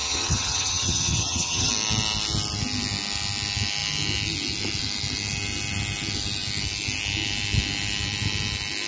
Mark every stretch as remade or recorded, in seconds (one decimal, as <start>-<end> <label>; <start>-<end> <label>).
0.0-1.7 remade; 1.7-8.9 recorded